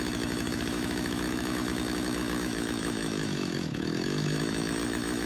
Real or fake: fake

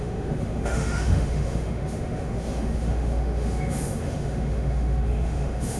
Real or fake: fake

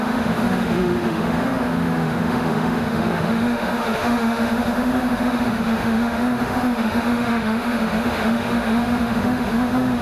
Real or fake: fake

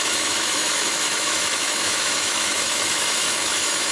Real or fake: fake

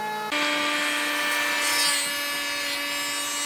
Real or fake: real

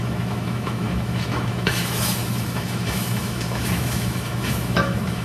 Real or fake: fake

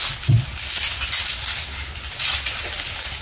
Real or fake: real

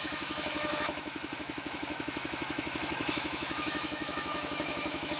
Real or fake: fake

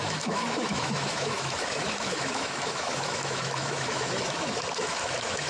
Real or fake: fake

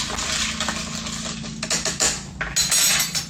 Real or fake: real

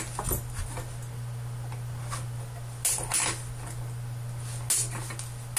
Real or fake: real